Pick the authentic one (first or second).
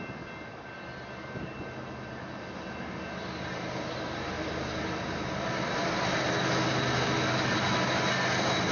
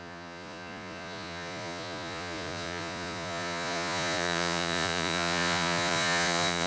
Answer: first